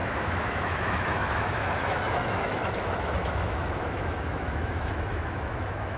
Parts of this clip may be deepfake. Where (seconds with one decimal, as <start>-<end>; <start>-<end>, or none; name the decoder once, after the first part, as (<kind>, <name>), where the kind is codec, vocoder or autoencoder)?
0.0-6.0 (autoencoder, DAC-VAE)